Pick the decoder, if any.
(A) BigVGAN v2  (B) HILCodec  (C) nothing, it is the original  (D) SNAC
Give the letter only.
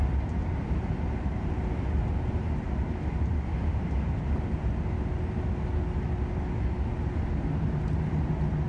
C